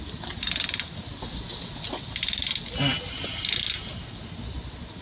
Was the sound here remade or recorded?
recorded